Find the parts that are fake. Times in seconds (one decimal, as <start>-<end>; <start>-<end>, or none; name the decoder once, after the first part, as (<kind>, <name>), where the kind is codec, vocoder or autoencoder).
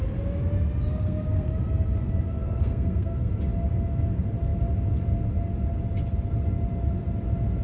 0.9-1.5 (codec, SNAC); 2.4-3.3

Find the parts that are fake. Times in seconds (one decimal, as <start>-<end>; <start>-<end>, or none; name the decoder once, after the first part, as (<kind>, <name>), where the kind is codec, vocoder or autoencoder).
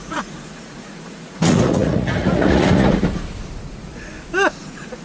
0.0-3.0 (vocoder, Vocos); 3.6-4.1; 4.6-5.0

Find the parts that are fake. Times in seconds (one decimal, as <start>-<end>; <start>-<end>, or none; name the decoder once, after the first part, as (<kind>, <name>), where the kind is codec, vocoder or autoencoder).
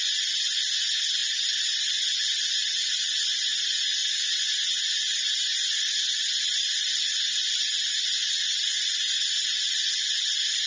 none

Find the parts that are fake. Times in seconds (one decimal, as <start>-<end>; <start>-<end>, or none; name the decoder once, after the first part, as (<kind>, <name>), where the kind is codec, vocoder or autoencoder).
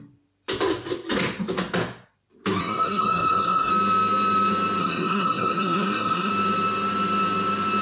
2.6-3.7 (codec, SNAC); 4.8-6.3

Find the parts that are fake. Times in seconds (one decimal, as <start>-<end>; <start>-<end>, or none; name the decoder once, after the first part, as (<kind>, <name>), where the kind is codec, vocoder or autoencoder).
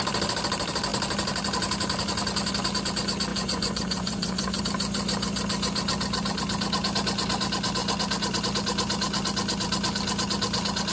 3.3-4.6 (vocoder, Vocos)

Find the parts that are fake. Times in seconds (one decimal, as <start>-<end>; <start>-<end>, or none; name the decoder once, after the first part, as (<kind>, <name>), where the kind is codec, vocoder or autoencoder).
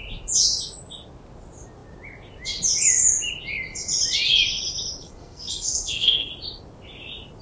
5.0-6.3 (codec, SNAC)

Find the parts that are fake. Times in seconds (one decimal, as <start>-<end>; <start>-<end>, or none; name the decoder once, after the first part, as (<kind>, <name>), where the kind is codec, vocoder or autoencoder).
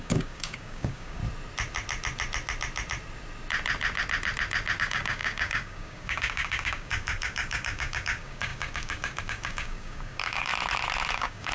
0.0-1.2 (codec, DAC); 4.8-10.5; 11.1-11.5